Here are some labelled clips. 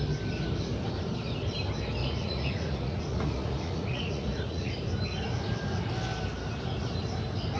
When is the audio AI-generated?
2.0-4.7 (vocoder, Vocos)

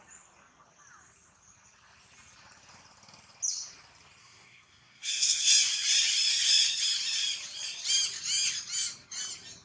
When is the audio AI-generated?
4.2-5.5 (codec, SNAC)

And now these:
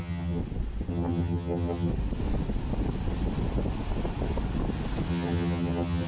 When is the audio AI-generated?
0.0-0.4 (vocoder, HiFi-GAN); 0.9-1.9; 5.1-6.1

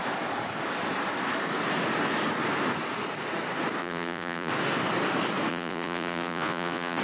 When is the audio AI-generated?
3.8-4.5 (vocoder, Vocos); 5.5-7.0

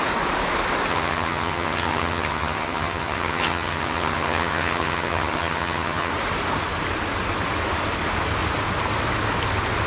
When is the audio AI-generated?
0.9-6.1 (vocoder, HiFi-GAN)

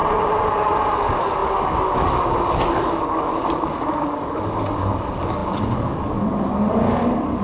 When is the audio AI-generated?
0.5-7.4 (codec, DAC)

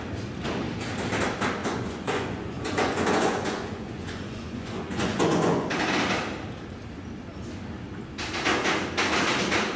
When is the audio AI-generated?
1.6-5.7 (vocoder, Vocos)

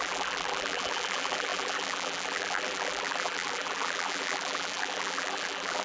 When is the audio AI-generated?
0.0-5.8 (vocoder, BigVGAN v2)